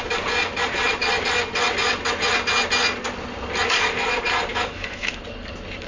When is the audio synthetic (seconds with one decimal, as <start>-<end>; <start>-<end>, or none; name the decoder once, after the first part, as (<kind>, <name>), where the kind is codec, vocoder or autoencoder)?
4.5-5.2 (autoencoder, DAC-VAE)